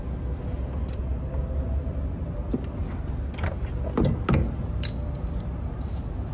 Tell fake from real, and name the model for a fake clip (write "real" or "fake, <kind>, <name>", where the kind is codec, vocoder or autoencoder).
real